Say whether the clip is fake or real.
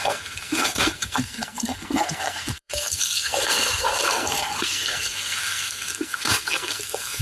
fake